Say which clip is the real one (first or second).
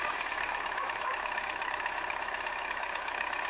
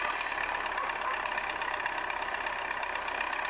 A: second